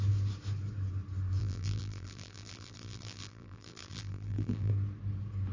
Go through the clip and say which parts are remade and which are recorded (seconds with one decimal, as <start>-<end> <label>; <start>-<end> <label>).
0.0-1.4 recorded; 1.4-4.7 remade; 4.7-5.5 recorded